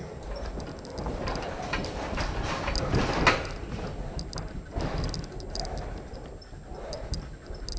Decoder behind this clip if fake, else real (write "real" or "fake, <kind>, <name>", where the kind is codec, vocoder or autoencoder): real